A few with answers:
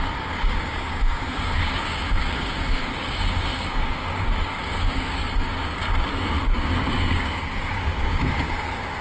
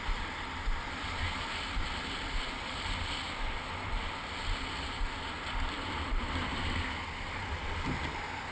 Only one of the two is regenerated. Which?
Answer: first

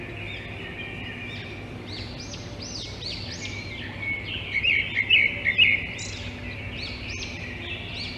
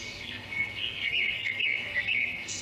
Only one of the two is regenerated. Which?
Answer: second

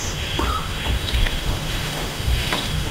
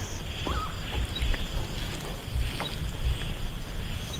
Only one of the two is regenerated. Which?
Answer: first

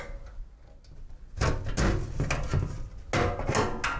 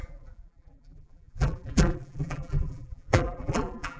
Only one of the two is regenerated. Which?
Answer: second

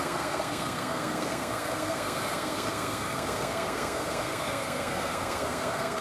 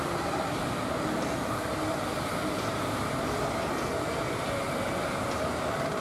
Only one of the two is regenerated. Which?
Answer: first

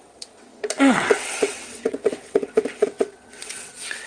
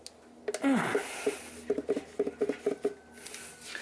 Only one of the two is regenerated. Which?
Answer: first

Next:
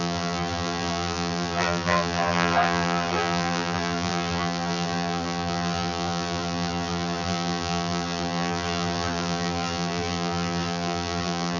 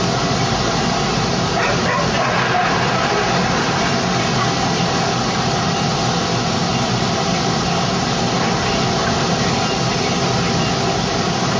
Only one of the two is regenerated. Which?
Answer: first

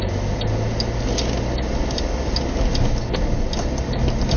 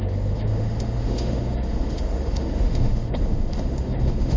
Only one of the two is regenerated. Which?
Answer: second